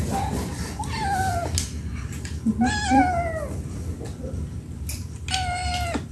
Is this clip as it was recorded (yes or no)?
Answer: yes